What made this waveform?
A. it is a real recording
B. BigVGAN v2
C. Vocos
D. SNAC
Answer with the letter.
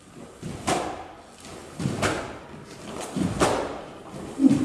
A